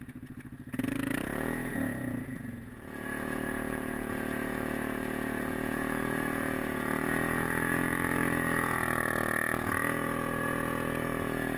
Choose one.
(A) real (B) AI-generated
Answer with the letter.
B